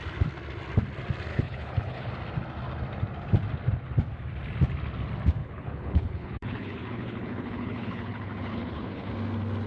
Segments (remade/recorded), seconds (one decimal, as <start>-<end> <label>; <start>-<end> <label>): 0.0-1.3 recorded; 1.3-2.1 remade; 2.1-5.4 recorded; 5.4-9.1 remade; 9.1-9.7 recorded